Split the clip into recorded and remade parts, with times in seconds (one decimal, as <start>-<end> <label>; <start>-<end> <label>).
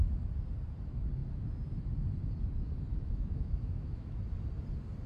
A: 0.0-2.9 recorded; 2.9-4.2 remade; 4.2-5.1 recorded